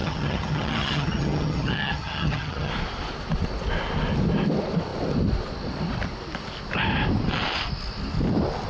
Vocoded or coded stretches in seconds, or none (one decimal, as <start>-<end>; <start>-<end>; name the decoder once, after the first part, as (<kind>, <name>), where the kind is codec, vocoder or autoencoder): 0.0-2.7 (vocoder, HiFi-GAN)